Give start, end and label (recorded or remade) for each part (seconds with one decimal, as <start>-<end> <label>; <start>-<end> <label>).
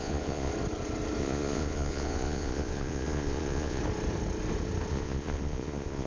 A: 0.0-0.5 remade; 0.5-1.2 recorded; 1.2-3.8 remade; 3.8-4.9 recorded; 4.9-6.1 remade